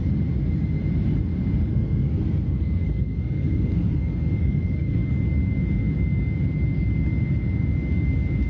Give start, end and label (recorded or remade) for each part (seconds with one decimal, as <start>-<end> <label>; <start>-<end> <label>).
0.0-1.7 recorded; 1.7-5.1 remade; 5.1-8.5 recorded